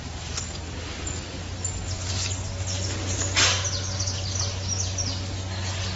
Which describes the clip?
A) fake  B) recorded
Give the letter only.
B